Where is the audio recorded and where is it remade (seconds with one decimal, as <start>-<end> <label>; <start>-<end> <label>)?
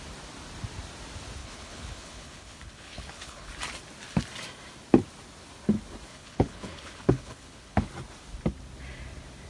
0.0-1.4 recorded; 1.4-3.5 remade; 3.5-6.1 recorded; 6.1-7.9 remade; 7.9-9.5 recorded